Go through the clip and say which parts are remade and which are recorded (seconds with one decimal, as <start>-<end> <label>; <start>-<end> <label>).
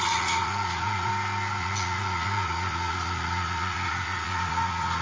0.0-1.1 remade; 1.1-1.6 recorded; 1.6-5.0 remade